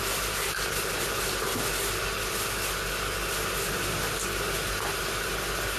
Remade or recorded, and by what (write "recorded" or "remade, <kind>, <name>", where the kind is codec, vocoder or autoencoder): recorded